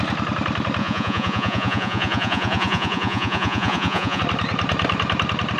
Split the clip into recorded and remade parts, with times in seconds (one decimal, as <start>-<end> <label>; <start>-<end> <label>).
0.0-0.8 recorded; 0.8-4.2 remade; 4.2-5.6 recorded